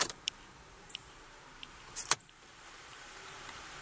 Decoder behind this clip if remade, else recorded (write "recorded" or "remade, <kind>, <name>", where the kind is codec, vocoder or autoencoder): remade, vocoder, BigVGAN v2